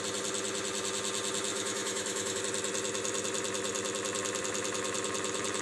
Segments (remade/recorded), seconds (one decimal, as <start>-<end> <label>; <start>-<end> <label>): 0.0-1.5 recorded; 1.5-2.4 remade; 2.4-5.6 recorded